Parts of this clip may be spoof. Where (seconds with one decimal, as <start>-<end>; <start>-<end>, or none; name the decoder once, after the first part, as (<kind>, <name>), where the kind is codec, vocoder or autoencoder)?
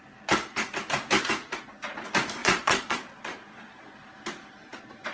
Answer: 2.4-3.9 (vocoder, Vocos)